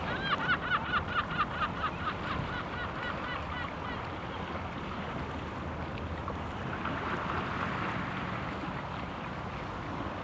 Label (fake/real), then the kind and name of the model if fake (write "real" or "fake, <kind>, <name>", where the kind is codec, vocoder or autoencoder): real